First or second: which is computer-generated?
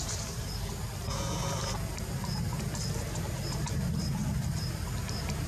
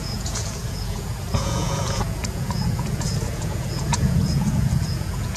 second